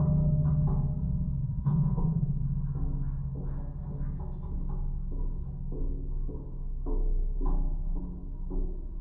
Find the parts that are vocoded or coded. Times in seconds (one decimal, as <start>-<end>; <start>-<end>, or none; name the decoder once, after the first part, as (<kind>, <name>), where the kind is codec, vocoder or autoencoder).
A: 1.4-2.4 (vocoder, Vocos)